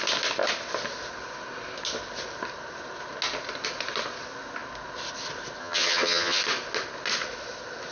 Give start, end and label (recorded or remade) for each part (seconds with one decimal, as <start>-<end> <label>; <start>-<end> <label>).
0.0-5.6 recorded; 5.6-6.4 remade; 6.4-7.9 recorded